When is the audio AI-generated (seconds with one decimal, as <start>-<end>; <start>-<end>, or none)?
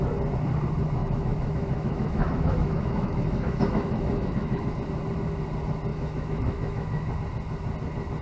1.0-4.7; 5.9-7.1